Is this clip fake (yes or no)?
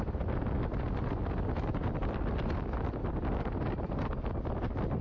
no